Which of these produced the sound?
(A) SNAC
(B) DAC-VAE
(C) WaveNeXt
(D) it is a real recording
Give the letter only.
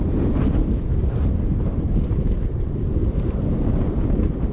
D